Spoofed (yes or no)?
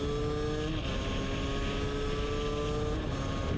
no